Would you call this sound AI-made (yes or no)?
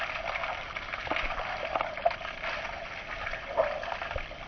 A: no